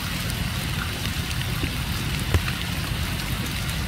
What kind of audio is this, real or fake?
real